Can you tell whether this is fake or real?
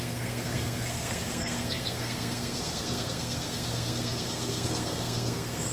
fake